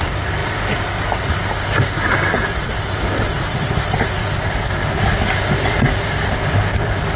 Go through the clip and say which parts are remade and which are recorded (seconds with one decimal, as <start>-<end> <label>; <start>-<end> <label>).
0.0-7.2 recorded

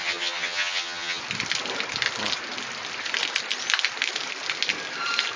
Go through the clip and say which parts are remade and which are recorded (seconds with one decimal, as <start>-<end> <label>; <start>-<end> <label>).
0.0-1.2 remade; 1.2-5.4 recorded

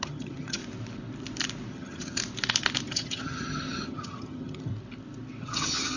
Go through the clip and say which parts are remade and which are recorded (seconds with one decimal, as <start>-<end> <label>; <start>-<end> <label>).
0.0-0.6 remade; 0.6-1.7 recorded; 1.7-2.2 remade; 2.2-2.9 recorded; 2.9-4.7 remade; 4.7-5.4 recorded; 5.4-6.0 remade

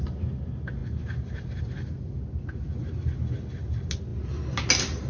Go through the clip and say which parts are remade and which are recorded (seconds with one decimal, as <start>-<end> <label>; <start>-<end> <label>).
0.0-5.1 recorded

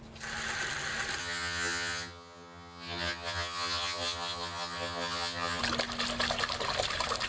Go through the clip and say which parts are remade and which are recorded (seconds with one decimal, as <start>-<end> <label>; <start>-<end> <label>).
0.0-1.2 recorded; 1.2-5.6 remade; 5.6-7.3 recorded

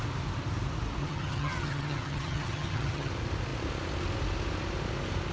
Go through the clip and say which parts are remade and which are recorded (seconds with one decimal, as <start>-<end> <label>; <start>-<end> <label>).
0.0-1.0 recorded; 1.0-3.1 remade; 3.1-5.3 recorded

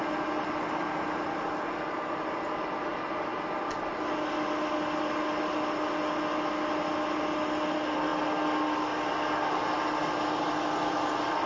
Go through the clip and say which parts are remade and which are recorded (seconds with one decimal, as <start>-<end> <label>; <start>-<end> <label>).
0.0-11.5 recorded